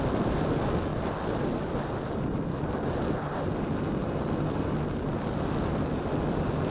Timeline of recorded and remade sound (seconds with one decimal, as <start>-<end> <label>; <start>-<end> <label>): 0.0-6.7 recorded